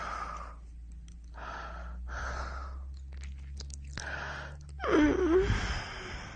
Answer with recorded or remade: recorded